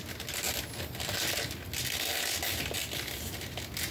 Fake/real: real